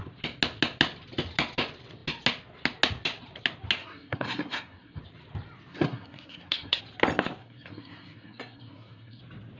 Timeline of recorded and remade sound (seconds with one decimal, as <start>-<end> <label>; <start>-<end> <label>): 0.0-3.8 recorded; 3.8-5.0 remade; 5.0-5.7 recorded; 5.7-6.8 remade; 6.8-7.4 recorded; 7.4-9.2 remade; 9.2-9.6 recorded